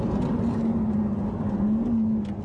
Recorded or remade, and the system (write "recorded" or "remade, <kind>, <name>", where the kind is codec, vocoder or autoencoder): recorded